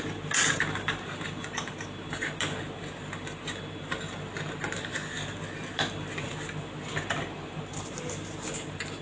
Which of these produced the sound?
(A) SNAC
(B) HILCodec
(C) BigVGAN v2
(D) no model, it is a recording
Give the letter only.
D